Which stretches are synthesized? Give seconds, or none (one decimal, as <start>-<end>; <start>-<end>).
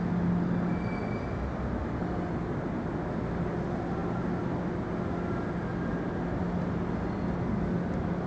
none